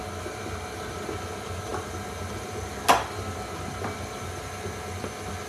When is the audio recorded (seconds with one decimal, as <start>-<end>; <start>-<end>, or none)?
0.0-5.5